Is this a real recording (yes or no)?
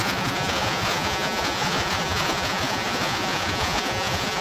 no